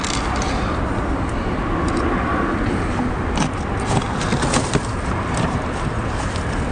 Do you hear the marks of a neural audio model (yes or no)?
no